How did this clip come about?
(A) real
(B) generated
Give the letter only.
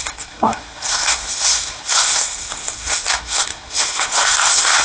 B